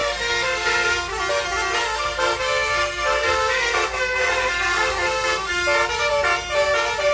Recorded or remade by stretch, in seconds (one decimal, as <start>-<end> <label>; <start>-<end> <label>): 0.0-1.1 remade; 1.1-1.8 recorded; 1.8-5.5 remade; 5.5-7.1 recorded